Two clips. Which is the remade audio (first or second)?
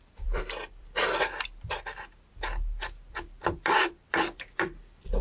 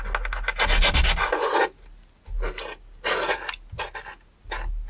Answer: first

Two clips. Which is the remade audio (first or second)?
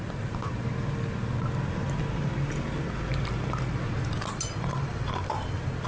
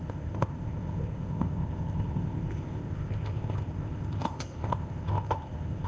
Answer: second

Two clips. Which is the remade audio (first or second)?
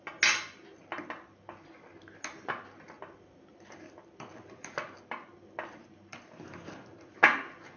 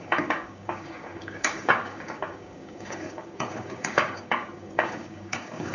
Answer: second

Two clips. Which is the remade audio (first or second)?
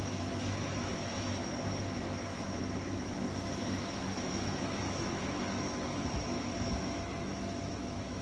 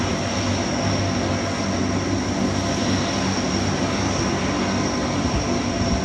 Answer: first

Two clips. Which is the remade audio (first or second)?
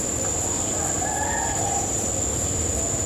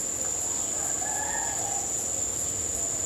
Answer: first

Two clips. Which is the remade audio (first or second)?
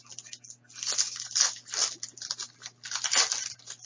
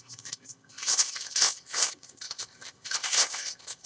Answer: second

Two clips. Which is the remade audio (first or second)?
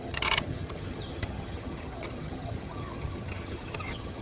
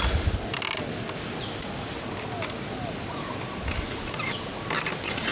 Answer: first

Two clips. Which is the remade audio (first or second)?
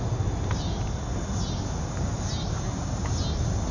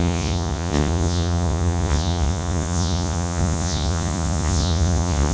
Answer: second